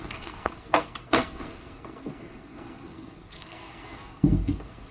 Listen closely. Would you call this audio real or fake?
fake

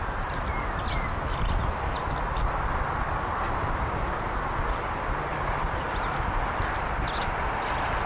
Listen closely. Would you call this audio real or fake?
real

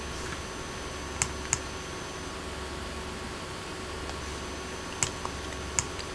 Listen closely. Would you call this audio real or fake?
real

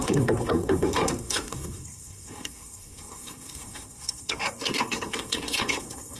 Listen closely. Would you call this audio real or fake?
fake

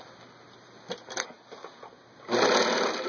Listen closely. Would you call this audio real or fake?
real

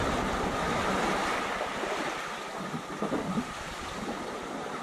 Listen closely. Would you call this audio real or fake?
fake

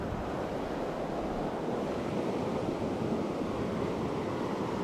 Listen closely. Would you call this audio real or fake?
real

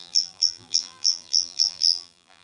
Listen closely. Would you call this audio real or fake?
fake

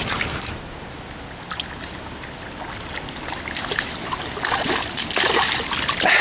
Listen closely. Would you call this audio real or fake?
real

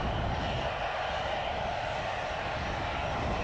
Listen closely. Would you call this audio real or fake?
real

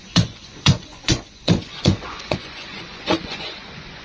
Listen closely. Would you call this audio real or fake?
fake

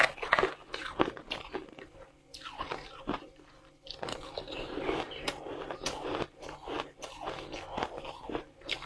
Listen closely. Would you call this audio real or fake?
real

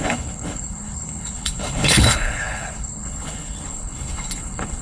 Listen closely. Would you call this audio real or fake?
fake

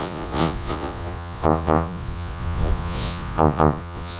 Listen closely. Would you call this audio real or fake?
fake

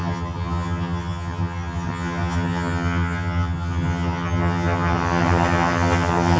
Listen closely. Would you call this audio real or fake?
fake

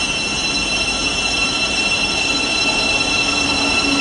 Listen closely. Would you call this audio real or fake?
real